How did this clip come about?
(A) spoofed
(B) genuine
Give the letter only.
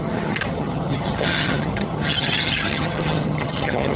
A